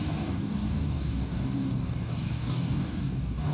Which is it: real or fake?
fake